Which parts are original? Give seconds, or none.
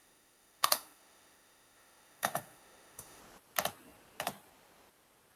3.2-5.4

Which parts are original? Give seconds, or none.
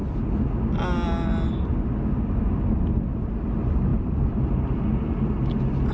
0.0-3.9; 5.5-5.9